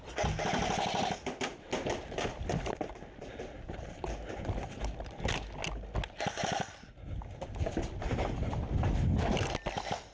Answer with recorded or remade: recorded